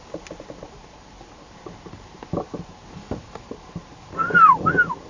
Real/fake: real